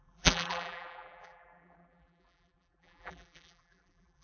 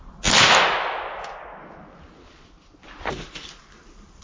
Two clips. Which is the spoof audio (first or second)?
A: first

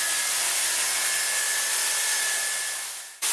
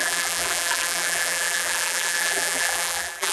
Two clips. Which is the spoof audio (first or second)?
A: second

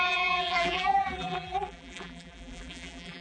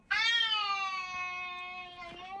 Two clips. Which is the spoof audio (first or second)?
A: first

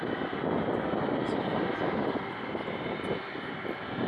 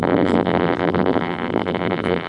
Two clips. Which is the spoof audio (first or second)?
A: second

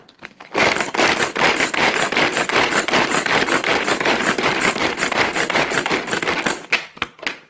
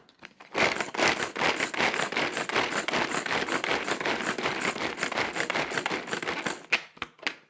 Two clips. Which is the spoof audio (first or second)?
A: first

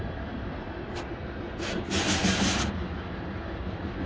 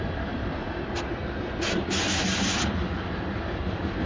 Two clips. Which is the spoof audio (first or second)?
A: second